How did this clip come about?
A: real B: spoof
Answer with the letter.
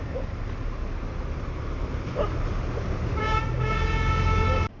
A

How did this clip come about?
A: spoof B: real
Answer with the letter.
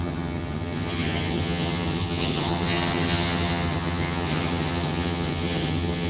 A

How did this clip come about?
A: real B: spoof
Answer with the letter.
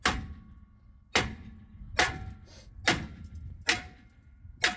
A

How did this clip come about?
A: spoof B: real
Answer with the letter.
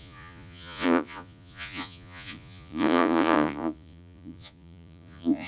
A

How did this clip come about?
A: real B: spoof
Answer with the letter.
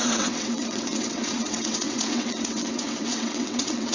B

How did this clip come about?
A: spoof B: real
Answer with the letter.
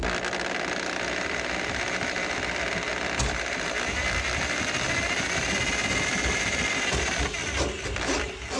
B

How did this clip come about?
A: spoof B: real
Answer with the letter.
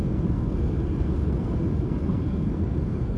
A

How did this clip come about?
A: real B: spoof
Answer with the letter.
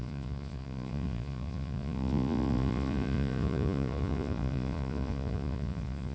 B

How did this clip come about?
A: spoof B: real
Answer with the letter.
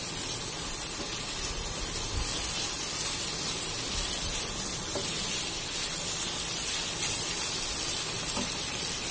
B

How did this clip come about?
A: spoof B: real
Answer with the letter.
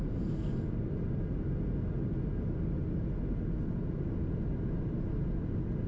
B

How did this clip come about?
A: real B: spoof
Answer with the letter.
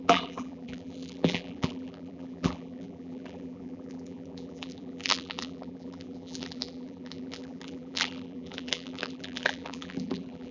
B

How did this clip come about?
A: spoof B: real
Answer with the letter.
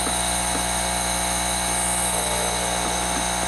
B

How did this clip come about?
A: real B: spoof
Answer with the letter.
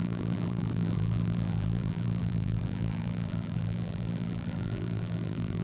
B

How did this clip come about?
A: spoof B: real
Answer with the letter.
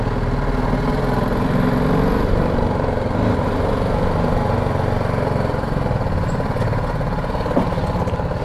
B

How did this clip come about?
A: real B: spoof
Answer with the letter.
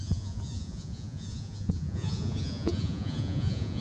B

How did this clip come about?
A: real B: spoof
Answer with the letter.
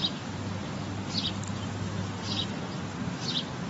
A